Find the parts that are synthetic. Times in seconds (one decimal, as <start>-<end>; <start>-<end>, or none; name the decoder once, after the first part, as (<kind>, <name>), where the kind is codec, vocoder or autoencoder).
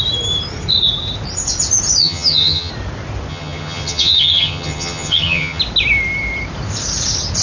2.0-2.7 (vocoder, HiFi-GAN); 3.3-5.6